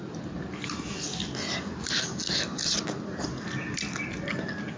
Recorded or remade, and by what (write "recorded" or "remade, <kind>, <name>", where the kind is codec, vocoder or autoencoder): recorded